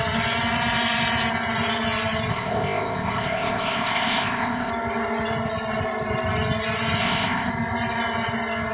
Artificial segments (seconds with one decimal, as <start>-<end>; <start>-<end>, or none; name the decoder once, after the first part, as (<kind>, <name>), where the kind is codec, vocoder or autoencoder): 2.3-4.7 (codec, ZipCodec); 7.0-7.5